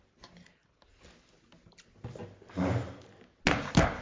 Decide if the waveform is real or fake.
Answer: real